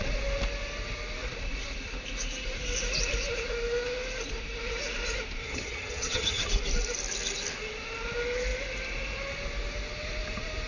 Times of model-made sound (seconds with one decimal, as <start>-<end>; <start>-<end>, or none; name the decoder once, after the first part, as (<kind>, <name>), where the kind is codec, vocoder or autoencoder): 5.4-6.5 (vocoder, HiFi-GAN)